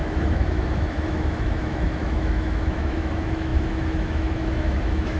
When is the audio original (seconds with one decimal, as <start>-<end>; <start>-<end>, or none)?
none